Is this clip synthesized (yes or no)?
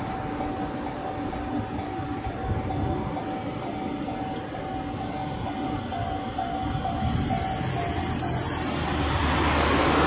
no